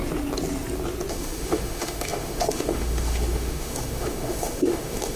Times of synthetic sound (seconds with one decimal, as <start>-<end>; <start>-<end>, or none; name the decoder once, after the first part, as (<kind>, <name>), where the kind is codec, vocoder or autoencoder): 1.1-5.2 (autoencoder, DAC-VAE)

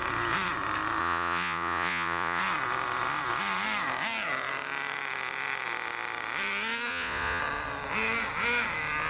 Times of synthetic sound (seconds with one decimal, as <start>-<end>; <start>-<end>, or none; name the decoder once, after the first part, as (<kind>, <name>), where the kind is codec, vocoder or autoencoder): 1.0-2.4 (vocoder, Vocos); 6.9-7.4

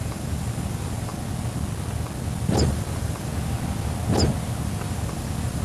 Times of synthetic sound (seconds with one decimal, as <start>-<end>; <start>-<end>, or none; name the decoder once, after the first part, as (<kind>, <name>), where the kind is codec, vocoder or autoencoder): 0.0-1.1 (vocoder, BigVGAN v2); 2.6-3.3; 4.9-5.6

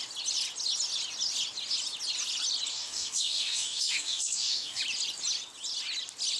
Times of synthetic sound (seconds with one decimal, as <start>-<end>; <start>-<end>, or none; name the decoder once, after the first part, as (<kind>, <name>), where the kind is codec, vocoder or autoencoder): 2.7-4.8 (codec, DAC)